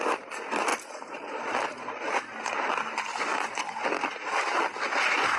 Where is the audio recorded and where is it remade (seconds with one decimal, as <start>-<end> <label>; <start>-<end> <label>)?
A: 0.0-5.4 recorded